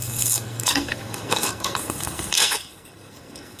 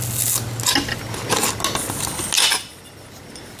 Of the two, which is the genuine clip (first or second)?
second